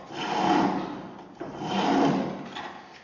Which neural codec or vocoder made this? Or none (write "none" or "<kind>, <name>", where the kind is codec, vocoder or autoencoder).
none